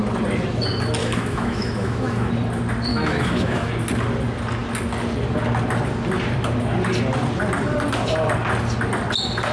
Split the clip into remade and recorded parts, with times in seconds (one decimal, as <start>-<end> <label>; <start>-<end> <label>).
0.0-1.0 recorded; 1.0-2.3 remade; 2.3-2.9 recorded; 2.9-3.7 remade; 3.7-9.5 recorded